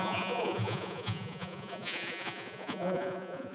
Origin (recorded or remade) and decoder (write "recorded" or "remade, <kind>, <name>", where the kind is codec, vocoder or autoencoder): remade, vocoder, Vocos